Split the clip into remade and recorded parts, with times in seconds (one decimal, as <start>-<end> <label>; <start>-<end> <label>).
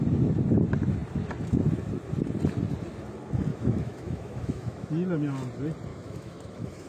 0.0-3.5 recorded; 3.5-4.9 remade; 4.9-5.9 recorded; 5.9-6.9 remade